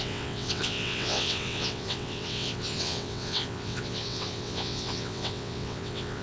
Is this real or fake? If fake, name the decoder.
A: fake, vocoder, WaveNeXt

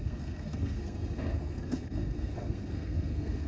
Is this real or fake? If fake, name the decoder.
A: fake, codec, SNAC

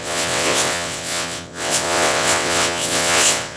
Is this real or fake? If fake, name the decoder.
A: fake, vocoder, WaveNeXt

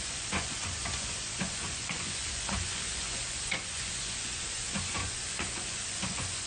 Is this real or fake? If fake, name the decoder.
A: fake, vocoder, Vocos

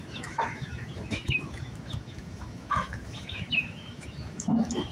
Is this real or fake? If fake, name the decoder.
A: fake, autoencoder, DAC-VAE